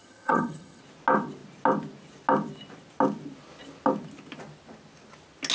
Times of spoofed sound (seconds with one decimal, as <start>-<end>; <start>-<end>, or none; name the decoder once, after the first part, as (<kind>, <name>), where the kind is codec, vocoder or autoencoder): 0.0-0.8 (vocoder, HiFi-GAN)